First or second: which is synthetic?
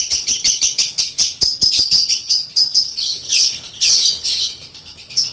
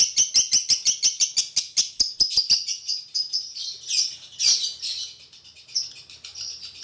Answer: first